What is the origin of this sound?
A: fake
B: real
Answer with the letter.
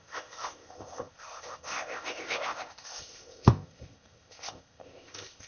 A